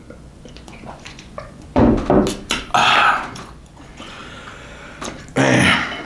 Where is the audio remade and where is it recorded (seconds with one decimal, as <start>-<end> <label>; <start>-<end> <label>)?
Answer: 0.0-1.8 remade; 1.8-3.1 recorded; 3.1-4.2 remade; 4.2-6.1 recorded